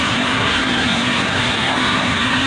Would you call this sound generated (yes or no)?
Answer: yes